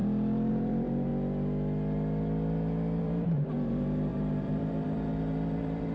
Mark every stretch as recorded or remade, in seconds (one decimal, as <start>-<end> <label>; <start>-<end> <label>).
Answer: 0.0-0.5 recorded; 0.5-1.1 remade; 1.1-3.0 recorded; 3.0-5.9 remade